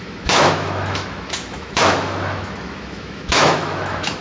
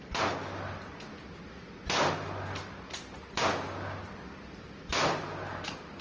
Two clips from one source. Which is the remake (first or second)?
first